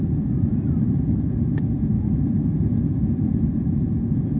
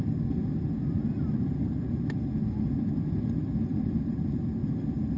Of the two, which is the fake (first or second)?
first